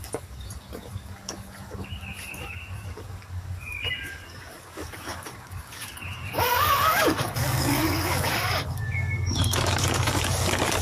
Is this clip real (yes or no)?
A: no